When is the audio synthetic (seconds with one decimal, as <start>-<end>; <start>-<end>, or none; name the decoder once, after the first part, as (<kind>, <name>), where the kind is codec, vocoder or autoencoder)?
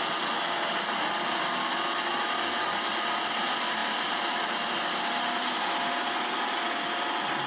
none